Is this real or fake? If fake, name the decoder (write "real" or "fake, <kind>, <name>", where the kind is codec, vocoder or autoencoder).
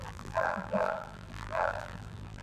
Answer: fake, vocoder, BigVGAN v2